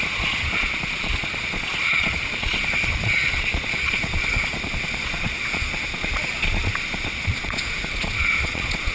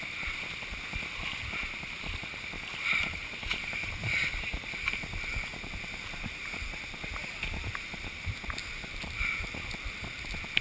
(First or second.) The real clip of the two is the second